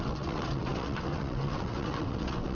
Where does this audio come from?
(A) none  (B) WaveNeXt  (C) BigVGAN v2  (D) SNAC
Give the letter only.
B